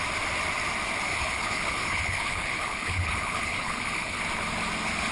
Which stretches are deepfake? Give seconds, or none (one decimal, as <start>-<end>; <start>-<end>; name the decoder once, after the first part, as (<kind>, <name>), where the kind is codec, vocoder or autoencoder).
1.1-4.2 (codec, HILCodec)